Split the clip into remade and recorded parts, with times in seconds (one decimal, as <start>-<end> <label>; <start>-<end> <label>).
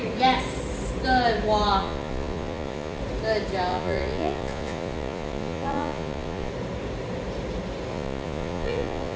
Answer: 0.0-1.8 recorded; 1.8-3.0 remade; 3.0-3.7 recorded; 3.7-6.5 remade; 6.5-7.9 recorded; 7.9-9.2 remade